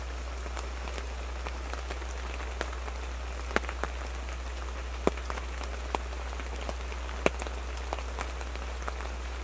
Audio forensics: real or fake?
real